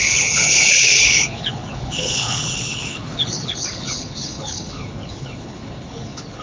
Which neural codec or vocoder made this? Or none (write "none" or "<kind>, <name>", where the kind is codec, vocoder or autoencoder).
codec, HILCodec